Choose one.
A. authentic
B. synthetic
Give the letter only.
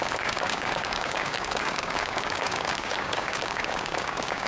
B